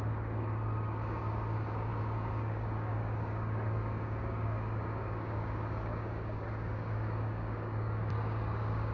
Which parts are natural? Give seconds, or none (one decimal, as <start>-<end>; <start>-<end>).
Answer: none